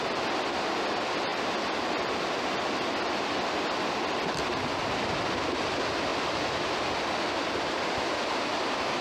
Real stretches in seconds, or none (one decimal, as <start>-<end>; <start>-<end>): 0.0-9.0